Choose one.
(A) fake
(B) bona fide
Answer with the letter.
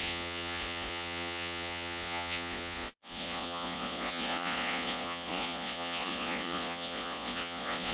A